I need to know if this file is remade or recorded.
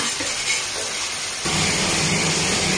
recorded